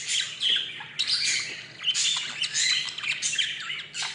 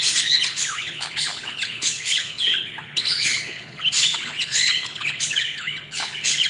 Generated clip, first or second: second